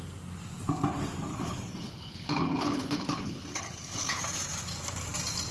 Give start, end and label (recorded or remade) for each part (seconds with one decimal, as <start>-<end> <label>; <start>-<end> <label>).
0.0-1.3 recorded; 1.3-4.2 remade; 4.2-5.5 recorded